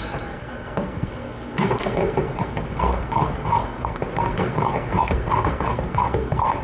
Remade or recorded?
remade